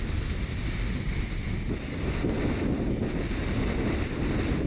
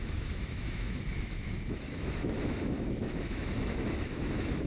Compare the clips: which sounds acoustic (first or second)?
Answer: first